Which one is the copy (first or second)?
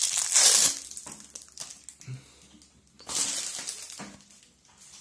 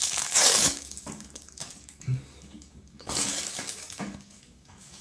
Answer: second